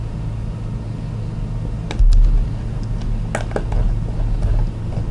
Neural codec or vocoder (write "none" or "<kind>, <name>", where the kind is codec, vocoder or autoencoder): none